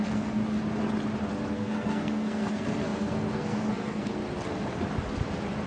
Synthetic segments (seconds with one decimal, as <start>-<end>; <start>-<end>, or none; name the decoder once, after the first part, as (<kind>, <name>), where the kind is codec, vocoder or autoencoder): 0.0-0.4 (codec, SNAC); 1.5-4.2